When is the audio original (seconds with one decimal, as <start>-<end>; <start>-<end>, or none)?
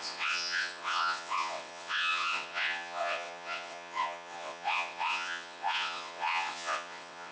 none